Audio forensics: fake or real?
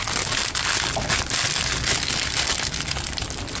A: fake